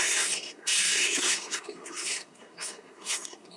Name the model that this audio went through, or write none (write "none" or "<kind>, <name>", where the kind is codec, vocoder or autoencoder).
codec, SNAC